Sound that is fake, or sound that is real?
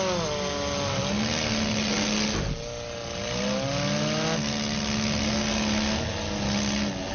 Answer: real